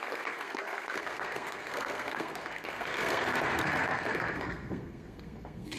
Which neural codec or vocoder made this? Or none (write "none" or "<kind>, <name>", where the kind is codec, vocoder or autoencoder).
codec, SNAC